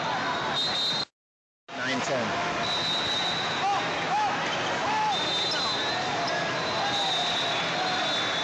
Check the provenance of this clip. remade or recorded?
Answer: recorded